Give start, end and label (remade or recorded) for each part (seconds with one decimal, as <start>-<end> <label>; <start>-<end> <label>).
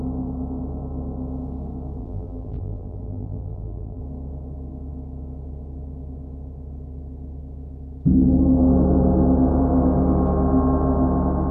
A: 0.0-2.0 recorded; 2.0-4.0 remade; 4.0-11.5 recorded